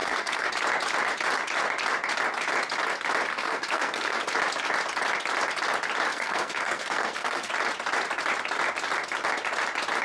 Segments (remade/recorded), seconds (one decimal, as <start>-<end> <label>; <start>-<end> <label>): 0.0-0.5 remade; 0.5-3.3 recorded; 3.3-4.2 remade; 4.2-6.1 recorded; 6.1-7.5 remade; 7.5-10.0 recorded